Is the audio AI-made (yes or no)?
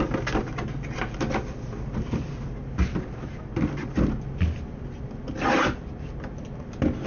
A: no